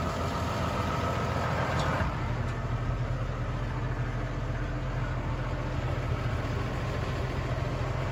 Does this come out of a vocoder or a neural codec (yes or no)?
no